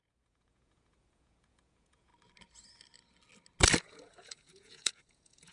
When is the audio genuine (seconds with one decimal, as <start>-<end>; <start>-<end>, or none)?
2.1-3.8